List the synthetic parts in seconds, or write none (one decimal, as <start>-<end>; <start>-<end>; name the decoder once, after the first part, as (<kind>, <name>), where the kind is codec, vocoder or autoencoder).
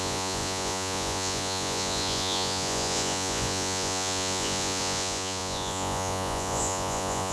0.0-7.3 (vocoder, Vocos)